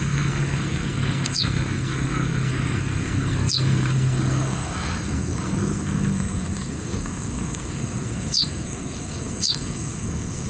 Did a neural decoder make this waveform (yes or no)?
yes